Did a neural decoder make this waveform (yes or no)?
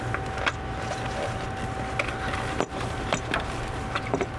no